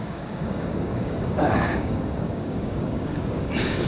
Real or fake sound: fake